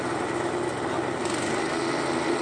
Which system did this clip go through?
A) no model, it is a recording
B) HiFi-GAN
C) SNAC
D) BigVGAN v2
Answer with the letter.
A